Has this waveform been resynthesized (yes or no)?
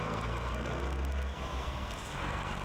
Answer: yes